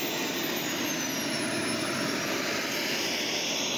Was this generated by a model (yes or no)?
no